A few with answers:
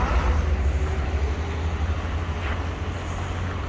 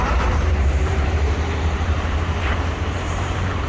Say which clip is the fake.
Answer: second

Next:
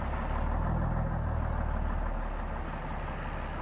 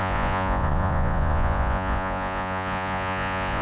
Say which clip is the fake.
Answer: second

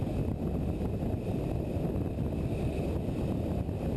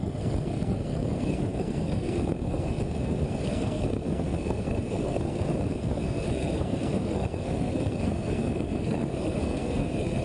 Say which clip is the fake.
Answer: second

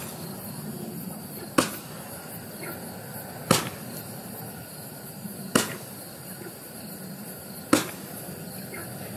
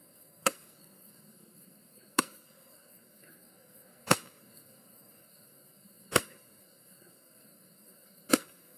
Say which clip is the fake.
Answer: second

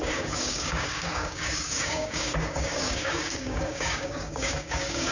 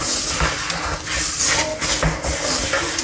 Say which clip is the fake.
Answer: first